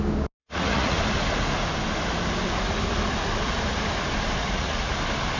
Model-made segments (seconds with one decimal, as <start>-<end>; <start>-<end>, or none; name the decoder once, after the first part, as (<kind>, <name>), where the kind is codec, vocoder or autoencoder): 0.4-1.0 (vocoder, Vocos); 4.4-4.9